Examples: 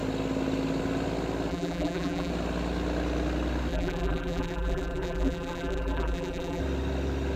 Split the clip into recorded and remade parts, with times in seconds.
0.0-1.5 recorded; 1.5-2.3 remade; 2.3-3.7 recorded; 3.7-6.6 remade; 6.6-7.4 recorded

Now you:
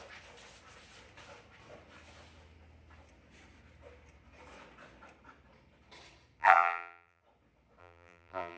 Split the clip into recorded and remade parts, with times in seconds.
0.0-6.4 recorded; 6.4-7.2 remade; 7.2-7.8 recorded; 7.8-8.6 remade

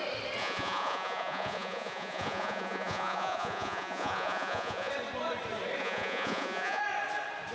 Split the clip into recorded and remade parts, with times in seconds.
0.0-0.4 recorded; 0.4-4.9 remade; 4.9-5.8 recorded; 5.8-6.8 remade; 6.8-7.5 recorded

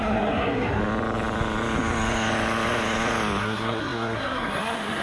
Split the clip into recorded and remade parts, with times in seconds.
0.0-0.8 remade; 0.8-3.4 recorded; 3.4-5.0 remade

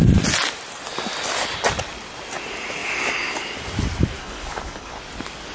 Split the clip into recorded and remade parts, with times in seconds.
0.0-4.2 recorded; 4.2-5.0 remade; 5.0-5.5 recorded